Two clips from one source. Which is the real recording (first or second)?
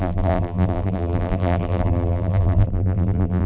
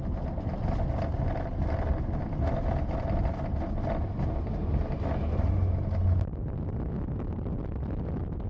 second